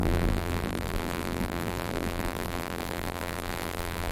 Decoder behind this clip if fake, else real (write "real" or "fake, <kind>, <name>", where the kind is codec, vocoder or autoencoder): fake, vocoder, BigVGAN v2